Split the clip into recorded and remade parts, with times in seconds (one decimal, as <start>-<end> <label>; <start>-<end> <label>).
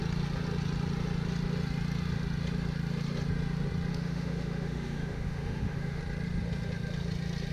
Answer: 0.0-3.9 recorded; 3.9-6.0 remade; 6.0-7.5 recorded